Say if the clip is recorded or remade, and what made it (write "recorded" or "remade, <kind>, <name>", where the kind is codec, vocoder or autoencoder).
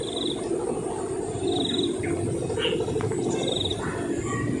recorded